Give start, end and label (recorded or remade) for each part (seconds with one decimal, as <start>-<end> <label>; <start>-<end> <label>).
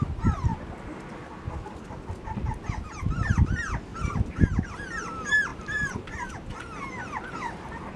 0.0-5.5 recorded; 5.5-6.6 remade; 6.6-8.0 recorded